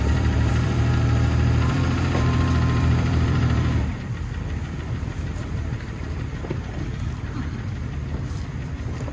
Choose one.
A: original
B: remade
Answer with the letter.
B